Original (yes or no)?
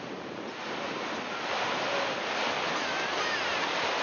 yes